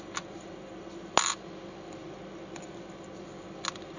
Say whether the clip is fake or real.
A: real